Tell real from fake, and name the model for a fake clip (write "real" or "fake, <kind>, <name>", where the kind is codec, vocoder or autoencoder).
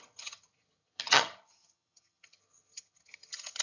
fake, vocoder, HiFi-GAN